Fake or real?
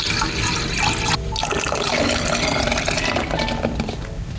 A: real